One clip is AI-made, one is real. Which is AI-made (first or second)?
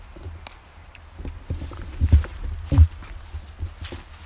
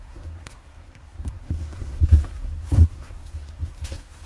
second